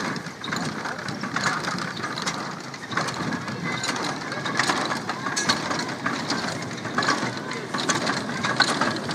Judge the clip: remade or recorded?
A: recorded